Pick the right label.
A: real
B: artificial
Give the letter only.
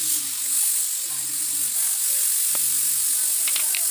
A